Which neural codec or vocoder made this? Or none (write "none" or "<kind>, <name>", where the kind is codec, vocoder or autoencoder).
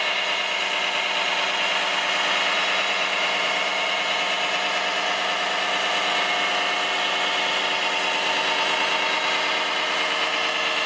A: none